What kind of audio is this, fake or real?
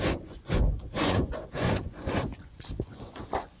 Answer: fake